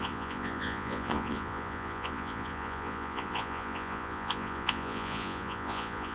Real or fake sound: fake